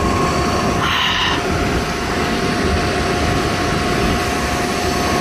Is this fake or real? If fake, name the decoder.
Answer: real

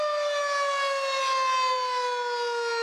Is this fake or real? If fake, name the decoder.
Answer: real